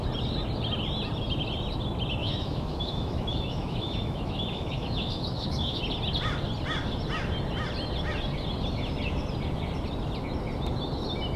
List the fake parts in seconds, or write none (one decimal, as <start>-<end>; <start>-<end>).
2.2-5.8